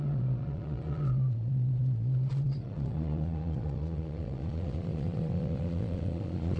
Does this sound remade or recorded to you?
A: remade